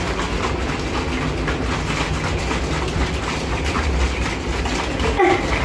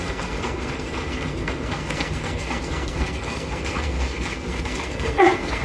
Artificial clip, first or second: second